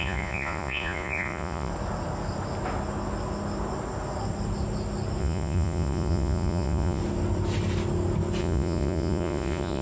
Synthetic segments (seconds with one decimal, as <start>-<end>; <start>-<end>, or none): 0.0-1.7; 5.2-7.0; 8.4-9.8